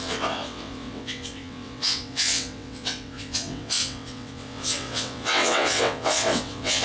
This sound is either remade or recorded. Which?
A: remade